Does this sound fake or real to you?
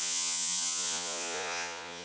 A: fake